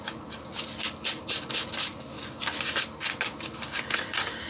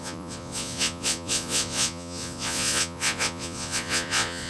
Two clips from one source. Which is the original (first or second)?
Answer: first